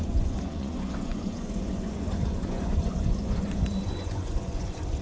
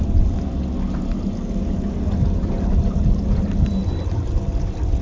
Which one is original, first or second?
second